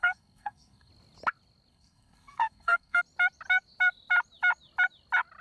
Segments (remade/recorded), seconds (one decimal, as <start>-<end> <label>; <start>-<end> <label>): 0.0-0.9 remade; 0.9-1.7 recorded; 1.7-3.0 remade; 3.0-5.4 recorded